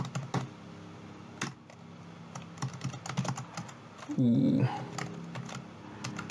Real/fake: real